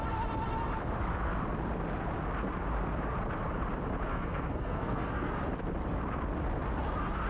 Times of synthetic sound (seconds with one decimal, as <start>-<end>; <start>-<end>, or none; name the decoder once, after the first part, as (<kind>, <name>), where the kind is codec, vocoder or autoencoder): 4.1-5.3 (codec, SNAC)